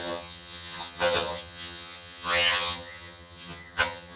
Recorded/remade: remade